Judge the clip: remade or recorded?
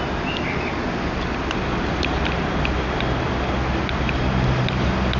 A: recorded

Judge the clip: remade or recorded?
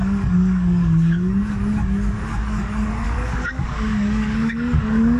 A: remade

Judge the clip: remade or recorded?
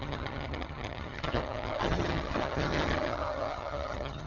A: remade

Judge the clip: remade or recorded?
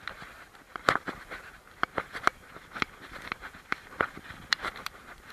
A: recorded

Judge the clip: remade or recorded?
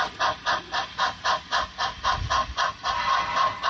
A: recorded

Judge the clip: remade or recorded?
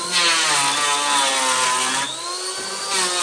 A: recorded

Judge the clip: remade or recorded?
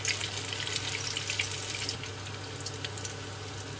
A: recorded